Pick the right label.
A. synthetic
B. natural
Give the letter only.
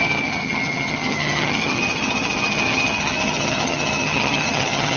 A